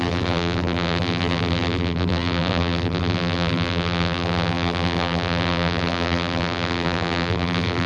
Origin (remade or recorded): remade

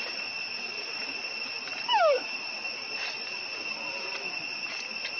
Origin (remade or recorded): recorded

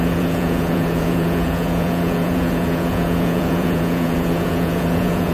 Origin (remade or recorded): remade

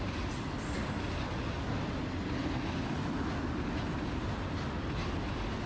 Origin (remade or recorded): recorded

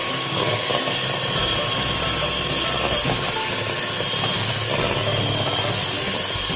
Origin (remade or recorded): recorded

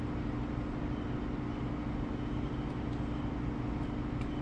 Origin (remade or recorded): recorded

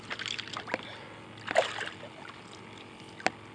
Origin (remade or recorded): recorded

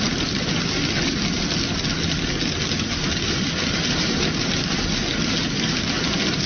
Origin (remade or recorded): recorded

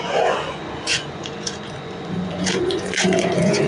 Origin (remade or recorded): remade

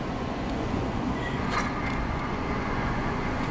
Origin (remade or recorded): remade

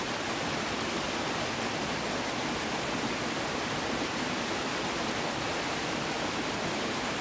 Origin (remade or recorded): recorded